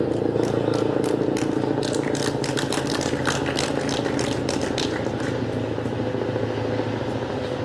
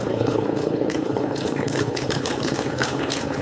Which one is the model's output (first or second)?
second